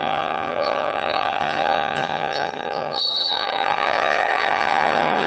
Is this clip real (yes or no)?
no